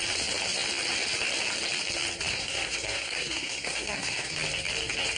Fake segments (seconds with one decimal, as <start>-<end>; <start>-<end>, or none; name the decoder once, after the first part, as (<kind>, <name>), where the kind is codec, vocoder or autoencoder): 2.3-4.3 (codec, SNAC)